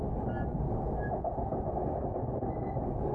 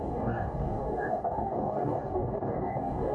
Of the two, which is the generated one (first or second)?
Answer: second